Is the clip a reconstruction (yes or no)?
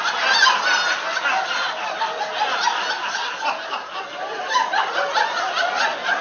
no